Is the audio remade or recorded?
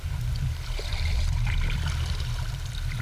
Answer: remade